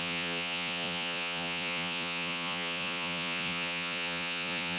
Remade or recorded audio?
remade